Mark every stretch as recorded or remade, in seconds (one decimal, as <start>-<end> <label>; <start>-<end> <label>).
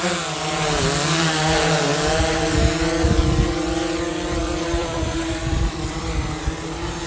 0.0-4.8 recorded; 4.8-6.2 remade; 6.2-7.1 recorded